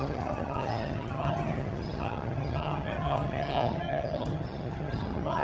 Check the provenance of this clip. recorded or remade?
remade